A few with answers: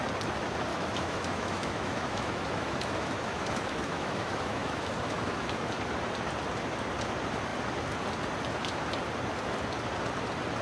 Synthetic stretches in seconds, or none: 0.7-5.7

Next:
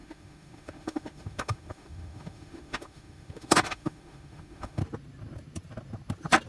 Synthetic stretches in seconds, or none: 0.0-4.8

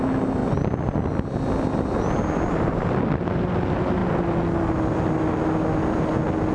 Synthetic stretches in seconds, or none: none

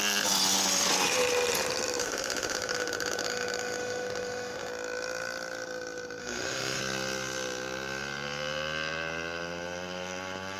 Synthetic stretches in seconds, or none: 2.0-4.7; 6.2-6.8

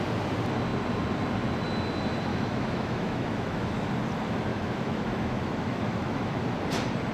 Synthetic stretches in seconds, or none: 2.3-3.7; 4.5-6.4

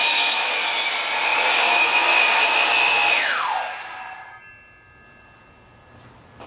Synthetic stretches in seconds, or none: 0.0-0.5

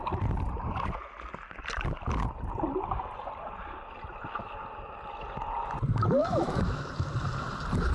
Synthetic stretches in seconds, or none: 6.2-6.9

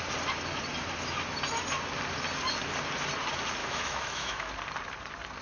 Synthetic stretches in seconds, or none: 3.6-4.5